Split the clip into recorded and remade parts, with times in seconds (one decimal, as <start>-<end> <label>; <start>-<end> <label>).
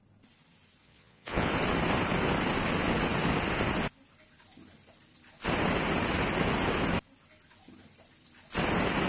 0.0-0.8 recorded; 0.8-1.5 remade; 1.5-9.1 recorded